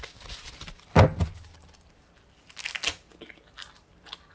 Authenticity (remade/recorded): recorded